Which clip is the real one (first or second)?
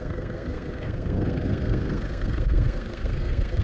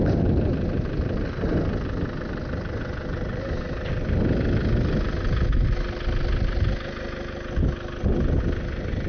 second